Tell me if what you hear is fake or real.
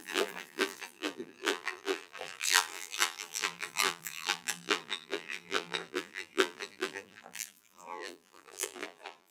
fake